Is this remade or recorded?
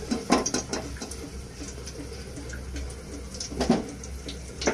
recorded